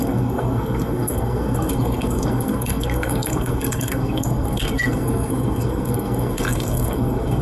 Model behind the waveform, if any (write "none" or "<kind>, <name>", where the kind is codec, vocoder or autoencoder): codec, SNAC